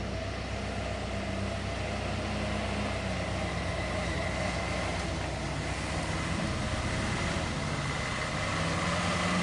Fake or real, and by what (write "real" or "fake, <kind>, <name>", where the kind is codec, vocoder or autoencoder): real